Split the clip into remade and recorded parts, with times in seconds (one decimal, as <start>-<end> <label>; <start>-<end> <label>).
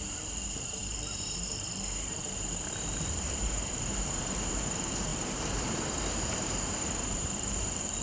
0.0-8.0 remade